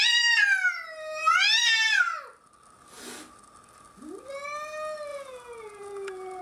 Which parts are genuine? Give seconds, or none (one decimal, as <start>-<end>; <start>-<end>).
0.0-5.1